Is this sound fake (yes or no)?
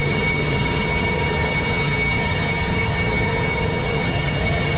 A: yes